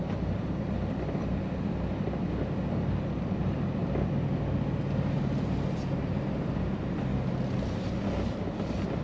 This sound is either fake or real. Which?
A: real